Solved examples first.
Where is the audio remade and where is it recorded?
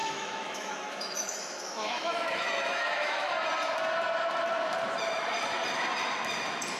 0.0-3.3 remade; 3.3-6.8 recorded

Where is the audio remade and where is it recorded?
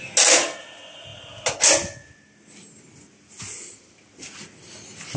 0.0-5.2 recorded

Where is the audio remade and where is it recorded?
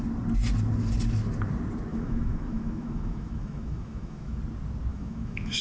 0.0-1.9 recorded; 1.9-4.4 remade; 4.4-4.9 recorded; 4.9-5.6 remade